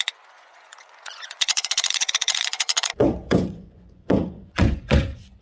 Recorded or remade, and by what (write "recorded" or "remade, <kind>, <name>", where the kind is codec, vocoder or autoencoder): remade, vocoder, Vocos